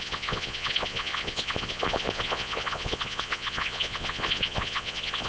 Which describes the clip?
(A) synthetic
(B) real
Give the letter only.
A